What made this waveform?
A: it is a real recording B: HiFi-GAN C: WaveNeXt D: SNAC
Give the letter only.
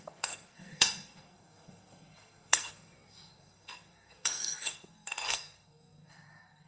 D